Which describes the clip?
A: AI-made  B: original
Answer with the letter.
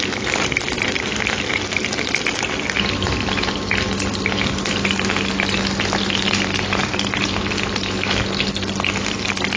B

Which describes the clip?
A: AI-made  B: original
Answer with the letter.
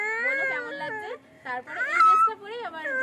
B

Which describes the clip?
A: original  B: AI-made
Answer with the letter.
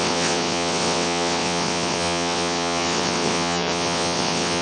B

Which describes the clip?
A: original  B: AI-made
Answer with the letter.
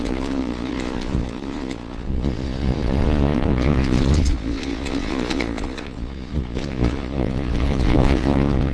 B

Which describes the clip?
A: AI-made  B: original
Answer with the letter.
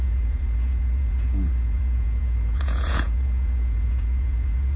A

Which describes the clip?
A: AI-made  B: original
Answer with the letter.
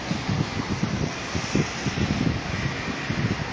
B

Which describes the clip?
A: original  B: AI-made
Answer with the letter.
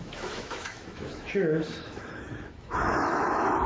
B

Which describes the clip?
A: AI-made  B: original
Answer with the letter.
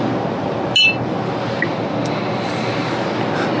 B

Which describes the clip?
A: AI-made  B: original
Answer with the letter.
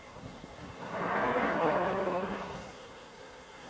A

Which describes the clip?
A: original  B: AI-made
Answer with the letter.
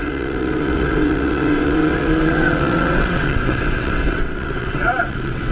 B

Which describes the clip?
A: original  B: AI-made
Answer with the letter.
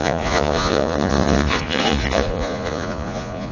B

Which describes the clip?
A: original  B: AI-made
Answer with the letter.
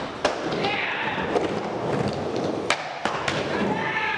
A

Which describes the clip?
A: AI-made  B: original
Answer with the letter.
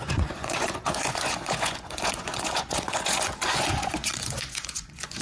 A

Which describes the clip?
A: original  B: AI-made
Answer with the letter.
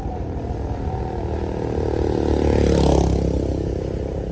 A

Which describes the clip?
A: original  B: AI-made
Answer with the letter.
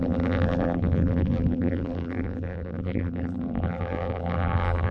B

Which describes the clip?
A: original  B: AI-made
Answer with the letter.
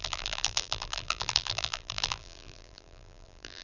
B